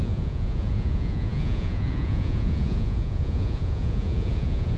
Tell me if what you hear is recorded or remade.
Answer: remade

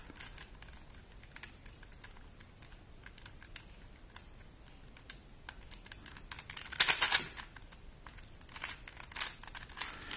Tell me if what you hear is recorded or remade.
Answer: recorded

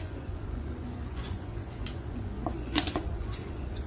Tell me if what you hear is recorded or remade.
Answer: remade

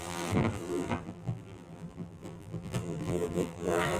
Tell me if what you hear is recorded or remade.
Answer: remade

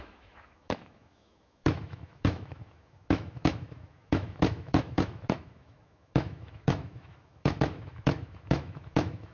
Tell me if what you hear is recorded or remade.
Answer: remade